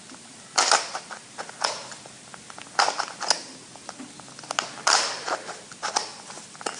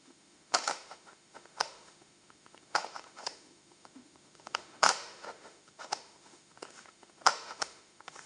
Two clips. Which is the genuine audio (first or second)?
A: first